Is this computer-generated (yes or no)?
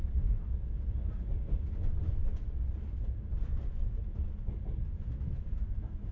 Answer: no